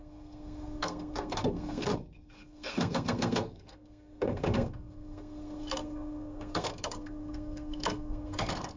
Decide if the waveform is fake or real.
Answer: fake